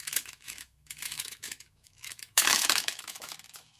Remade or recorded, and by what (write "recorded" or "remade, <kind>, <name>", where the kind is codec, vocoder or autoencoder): remade, autoencoder, DAC-VAE